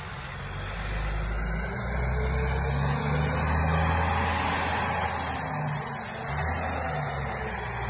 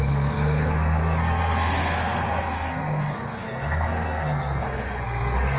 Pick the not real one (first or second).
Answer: second